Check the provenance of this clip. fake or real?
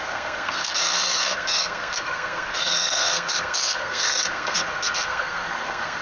fake